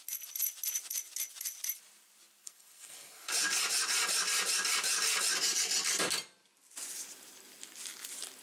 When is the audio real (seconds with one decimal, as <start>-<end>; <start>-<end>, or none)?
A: 0.0-2.4; 3.3-8.4